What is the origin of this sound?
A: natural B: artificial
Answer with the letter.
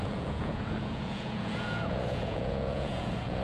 B